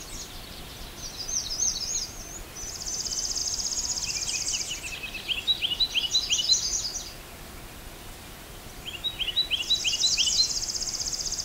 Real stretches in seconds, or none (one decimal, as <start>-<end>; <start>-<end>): 0.0-11.4